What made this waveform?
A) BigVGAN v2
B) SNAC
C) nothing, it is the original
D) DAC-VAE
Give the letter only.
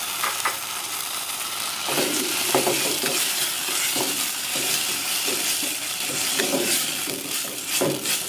A